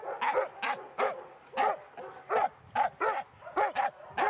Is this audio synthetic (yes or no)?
no